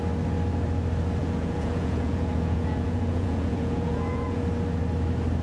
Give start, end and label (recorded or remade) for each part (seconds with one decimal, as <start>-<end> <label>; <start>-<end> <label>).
0.0-1.2 recorded; 1.2-4.4 remade; 4.4-5.4 recorded